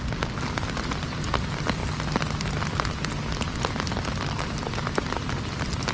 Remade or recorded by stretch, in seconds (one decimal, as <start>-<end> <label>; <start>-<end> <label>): 0.0-5.9 recorded